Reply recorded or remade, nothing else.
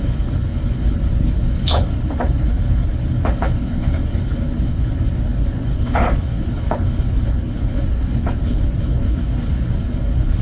remade